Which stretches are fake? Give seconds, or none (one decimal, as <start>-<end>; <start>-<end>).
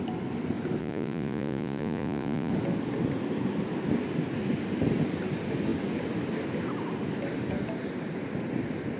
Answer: 0.8-2.5